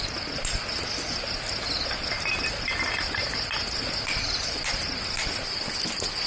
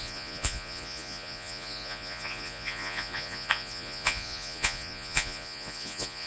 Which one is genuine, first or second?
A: first